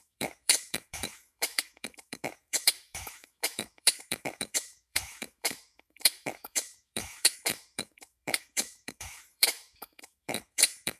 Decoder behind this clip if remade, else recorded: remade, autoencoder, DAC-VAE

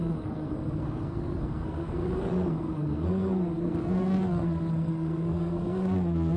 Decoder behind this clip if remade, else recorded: remade, codec, SNAC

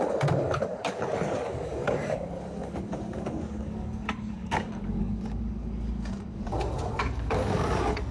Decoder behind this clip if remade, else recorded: remade, codec, DAC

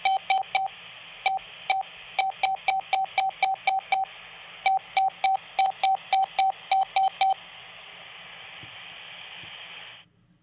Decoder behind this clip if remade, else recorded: recorded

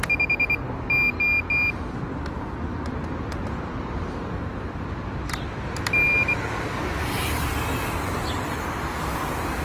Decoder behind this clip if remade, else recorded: recorded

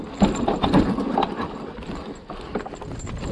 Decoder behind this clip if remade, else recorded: recorded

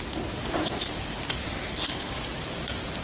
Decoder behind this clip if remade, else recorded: recorded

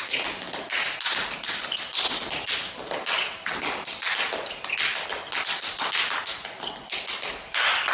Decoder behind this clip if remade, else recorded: recorded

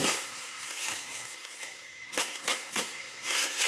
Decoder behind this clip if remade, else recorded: remade, codec, SNAC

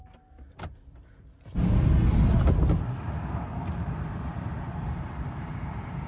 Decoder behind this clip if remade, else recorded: recorded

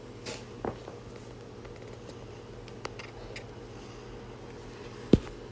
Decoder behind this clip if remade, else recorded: recorded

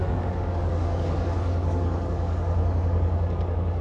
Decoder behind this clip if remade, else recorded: remade, codec, DAC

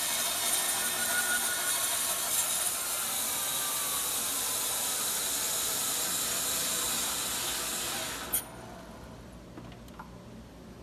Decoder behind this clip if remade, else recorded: recorded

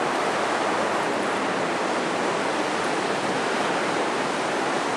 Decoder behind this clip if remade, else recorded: recorded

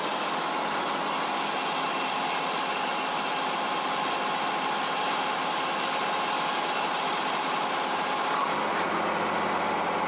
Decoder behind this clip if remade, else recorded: recorded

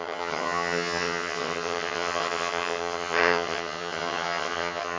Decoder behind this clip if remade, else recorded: remade, vocoder, HiFi-GAN